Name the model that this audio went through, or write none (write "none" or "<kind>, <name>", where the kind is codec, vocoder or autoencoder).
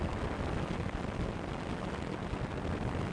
none